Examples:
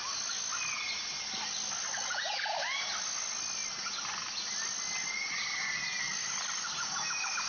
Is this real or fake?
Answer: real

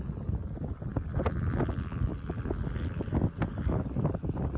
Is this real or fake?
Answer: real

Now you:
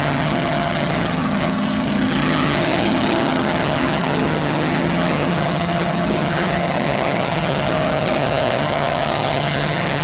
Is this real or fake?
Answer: fake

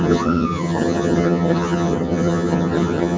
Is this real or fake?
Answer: fake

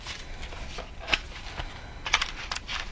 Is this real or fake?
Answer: real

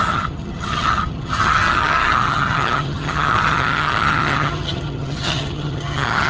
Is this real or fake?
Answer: fake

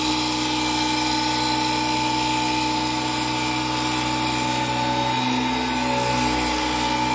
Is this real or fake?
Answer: real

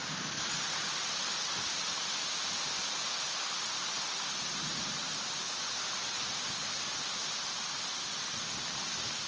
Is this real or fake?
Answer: real